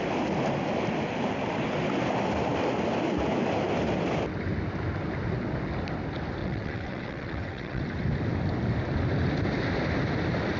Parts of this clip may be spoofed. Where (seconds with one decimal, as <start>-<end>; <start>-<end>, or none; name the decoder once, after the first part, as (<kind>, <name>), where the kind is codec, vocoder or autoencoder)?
6.4-7.8 (vocoder, WaveNeXt)